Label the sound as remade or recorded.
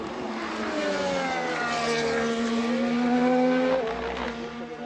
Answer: recorded